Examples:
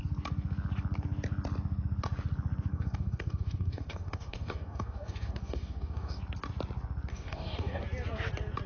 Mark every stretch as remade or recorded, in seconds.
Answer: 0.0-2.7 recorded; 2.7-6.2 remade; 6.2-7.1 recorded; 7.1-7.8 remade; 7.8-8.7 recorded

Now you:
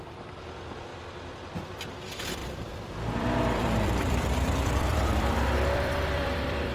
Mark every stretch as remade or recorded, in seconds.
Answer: 0.0-0.9 recorded; 0.9-2.0 remade; 2.0-2.4 recorded; 2.4-6.7 remade

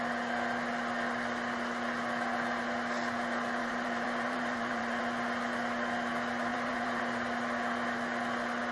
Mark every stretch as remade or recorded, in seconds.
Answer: 0.0-3.6 recorded; 3.6-5.0 remade; 5.0-6.5 recorded; 6.5-7.0 remade; 7.0-8.7 recorded

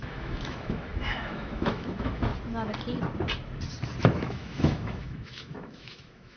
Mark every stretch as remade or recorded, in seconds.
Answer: 0.0-2.3 remade; 2.3-4.0 recorded; 4.0-6.4 remade

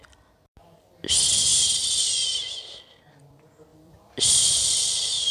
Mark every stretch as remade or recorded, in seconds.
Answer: 0.0-3.7 recorded; 3.7-4.5 remade; 4.5-5.3 recorded

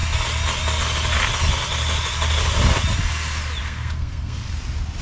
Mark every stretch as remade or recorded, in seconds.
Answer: 0.0-3.6 recorded; 3.6-4.5 remade; 4.5-5.0 recorded

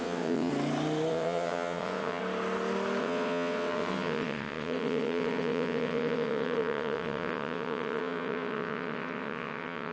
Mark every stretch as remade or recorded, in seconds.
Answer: 0.0-0.5 remade; 0.5-1.1 recorded; 1.1-2.2 remade; 2.2-3.0 recorded; 3.0-9.9 remade

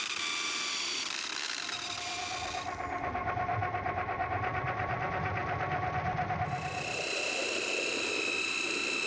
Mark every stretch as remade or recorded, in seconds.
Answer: 0.0-9.1 recorded